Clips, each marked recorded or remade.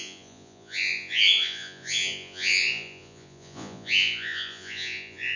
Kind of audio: remade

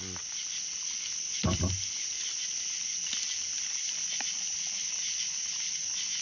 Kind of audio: recorded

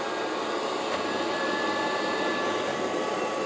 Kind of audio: recorded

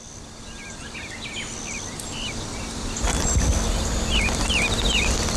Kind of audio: recorded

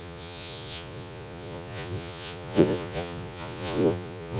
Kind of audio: remade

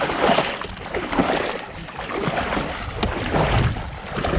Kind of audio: recorded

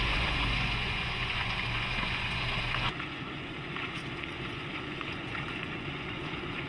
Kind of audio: remade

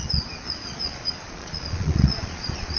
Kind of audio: remade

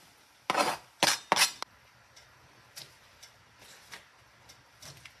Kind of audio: recorded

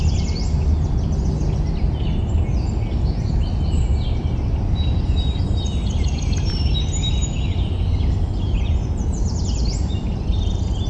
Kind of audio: recorded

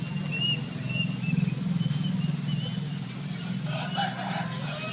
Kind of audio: recorded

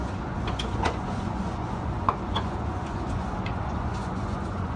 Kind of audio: remade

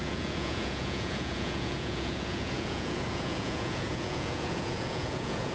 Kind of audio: remade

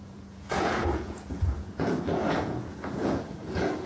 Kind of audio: remade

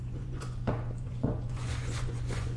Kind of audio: remade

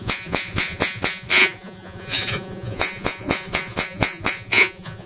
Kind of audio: remade